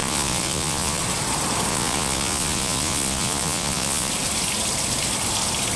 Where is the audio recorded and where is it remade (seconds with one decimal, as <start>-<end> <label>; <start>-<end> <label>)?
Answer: 0.0-1.0 remade; 1.0-1.7 recorded; 1.7-4.1 remade; 4.1-5.8 recorded